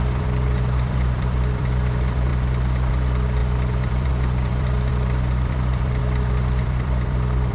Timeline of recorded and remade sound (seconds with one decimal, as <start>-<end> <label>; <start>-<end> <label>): 0.0-2.3 remade; 2.3-2.9 recorded; 2.9-7.5 remade